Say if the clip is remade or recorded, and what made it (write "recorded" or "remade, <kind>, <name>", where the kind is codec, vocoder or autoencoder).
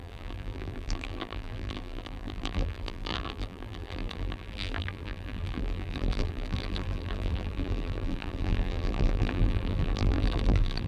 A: remade, vocoder, BigVGAN v2